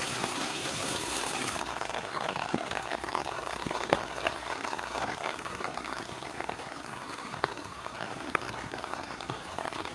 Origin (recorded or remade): remade